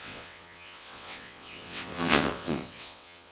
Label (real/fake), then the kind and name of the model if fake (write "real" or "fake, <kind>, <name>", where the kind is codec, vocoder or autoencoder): fake, vocoder, WaveNeXt